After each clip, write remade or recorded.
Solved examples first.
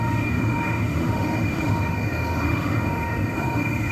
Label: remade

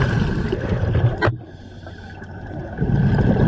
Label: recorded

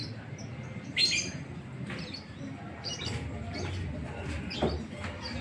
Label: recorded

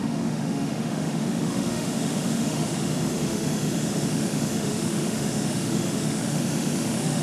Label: remade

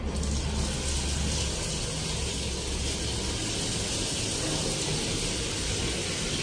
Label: recorded